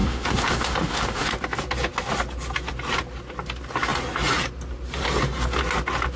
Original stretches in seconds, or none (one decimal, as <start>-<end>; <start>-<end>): 1.3-6.2